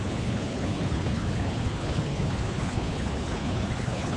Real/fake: fake